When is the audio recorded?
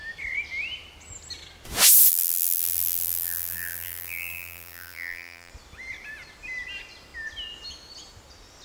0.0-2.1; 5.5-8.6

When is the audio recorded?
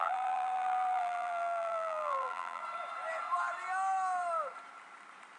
2.6-5.4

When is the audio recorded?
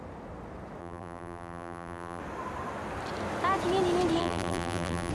0.0-0.8; 2.2-4.2